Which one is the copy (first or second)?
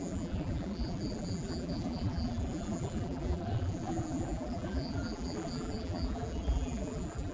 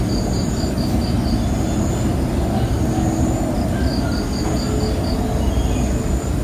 first